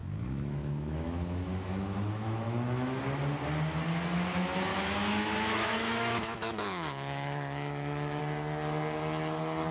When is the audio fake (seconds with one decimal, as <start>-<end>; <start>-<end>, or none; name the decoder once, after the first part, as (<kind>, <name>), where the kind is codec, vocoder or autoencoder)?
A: 0.0-3.0 (autoencoder, DAC-VAE); 4.7-8.2